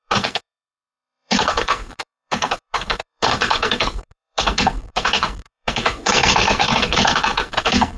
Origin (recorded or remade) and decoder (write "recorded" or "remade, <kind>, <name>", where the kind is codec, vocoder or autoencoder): remade, codec, SNAC